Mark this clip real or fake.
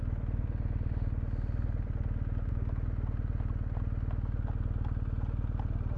real